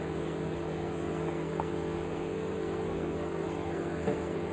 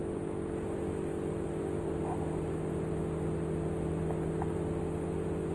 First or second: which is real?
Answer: second